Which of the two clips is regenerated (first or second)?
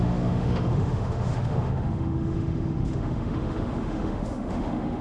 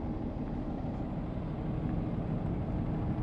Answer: first